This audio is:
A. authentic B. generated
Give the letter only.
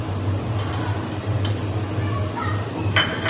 A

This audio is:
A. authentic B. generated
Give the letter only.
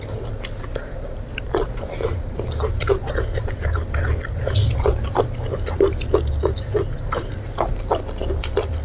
A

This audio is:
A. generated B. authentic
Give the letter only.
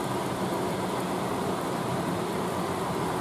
B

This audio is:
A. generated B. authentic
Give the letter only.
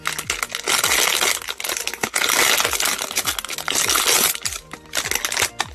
B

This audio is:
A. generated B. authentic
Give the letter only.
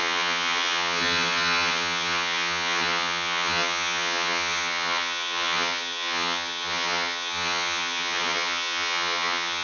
A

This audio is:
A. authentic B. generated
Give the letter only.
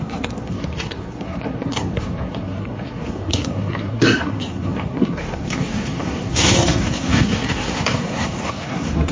B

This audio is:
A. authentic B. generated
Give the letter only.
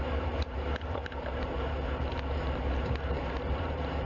B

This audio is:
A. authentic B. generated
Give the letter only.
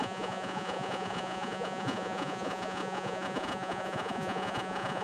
B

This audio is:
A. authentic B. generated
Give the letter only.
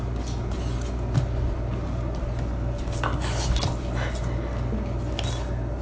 A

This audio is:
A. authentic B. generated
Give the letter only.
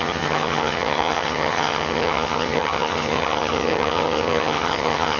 B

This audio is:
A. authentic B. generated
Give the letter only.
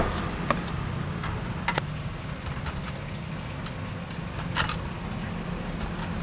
A